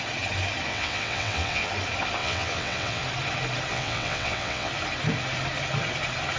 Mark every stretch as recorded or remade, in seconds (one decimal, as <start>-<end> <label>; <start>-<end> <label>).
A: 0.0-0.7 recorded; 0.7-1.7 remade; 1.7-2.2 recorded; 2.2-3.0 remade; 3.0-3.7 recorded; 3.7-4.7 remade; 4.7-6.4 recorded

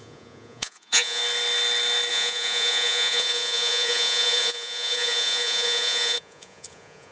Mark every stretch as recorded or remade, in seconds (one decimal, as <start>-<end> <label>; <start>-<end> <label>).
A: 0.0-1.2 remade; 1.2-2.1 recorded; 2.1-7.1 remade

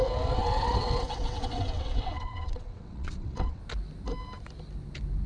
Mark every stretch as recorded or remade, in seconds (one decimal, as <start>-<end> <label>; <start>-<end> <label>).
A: 0.0-0.4 recorded; 0.4-3.6 remade; 3.6-5.3 recorded

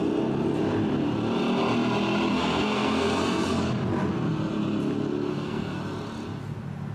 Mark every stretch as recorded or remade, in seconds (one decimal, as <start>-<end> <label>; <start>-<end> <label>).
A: 0.0-2.3 recorded; 2.3-3.7 remade; 3.7-5.3 recorded; 5.3-5.8 remade; 5.8-6.9 recorded

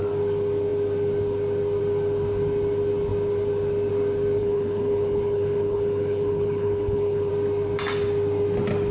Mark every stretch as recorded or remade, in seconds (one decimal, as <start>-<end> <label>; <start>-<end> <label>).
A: 0.0-4.4 recorded; 4.4-7.3 remade; 7.3-8.9 recorded

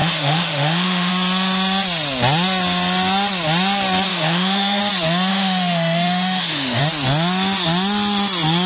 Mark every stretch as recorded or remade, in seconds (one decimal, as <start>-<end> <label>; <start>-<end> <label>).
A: 0.0-1.1 remade; 1.1-4.1 recorded; 4.1-4.8 remade; 4.8-5.3 recorded; 5.3-6.8 remade; 6.8-8.7 recorded